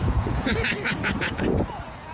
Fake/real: fake